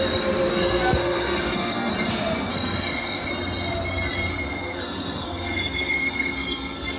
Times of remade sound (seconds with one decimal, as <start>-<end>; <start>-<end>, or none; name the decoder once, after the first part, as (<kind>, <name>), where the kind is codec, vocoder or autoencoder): 0.5-1.9 (codec, SNAC); 2.5-3.3; 4.3-7.0